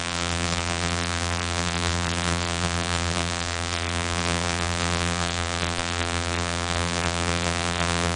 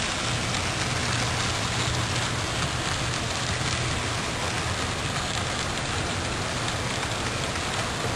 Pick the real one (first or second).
second